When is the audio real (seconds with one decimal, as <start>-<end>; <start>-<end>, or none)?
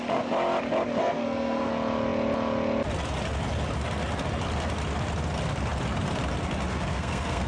0.0-1.0; 1.7-6.7